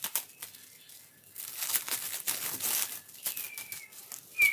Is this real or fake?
real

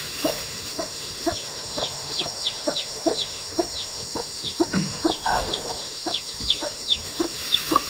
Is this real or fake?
fake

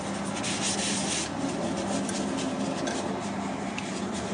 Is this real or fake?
real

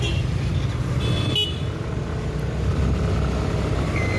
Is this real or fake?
real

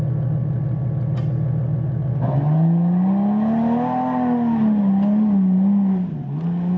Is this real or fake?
real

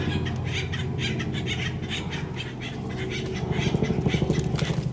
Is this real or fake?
real